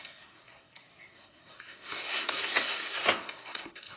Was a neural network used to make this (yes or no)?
yes